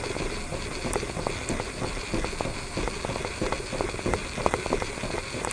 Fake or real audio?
real